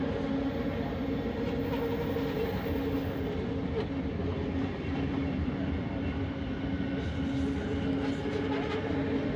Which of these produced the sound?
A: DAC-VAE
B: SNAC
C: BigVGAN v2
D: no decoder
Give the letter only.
D